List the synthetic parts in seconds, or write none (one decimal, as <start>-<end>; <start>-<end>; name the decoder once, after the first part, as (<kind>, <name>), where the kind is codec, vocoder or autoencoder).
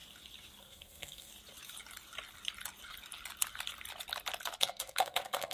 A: 0.6-1.3 (codec, SNAC); 4.6-5.5